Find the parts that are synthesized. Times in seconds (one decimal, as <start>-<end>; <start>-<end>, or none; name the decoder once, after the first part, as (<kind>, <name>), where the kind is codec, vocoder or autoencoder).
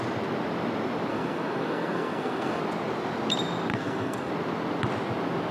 1.1-2.6 (codec, SNAC); 3.7-4.3